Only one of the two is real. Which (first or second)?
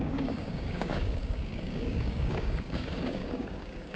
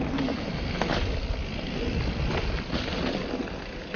second